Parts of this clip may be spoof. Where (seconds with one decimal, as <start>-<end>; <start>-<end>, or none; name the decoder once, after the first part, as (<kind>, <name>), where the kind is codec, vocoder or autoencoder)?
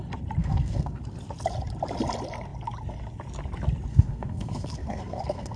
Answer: 0.4-1.0 (codec, SNAC); 3.9-5.6